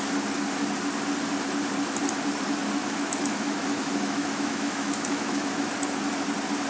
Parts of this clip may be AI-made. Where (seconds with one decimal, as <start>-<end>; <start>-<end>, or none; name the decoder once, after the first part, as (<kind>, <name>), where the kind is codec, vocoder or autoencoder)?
2.8-5.7 (autoencoder, DAC-VAE)